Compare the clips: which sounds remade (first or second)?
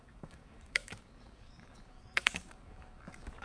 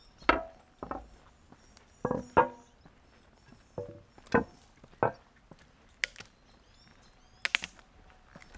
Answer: first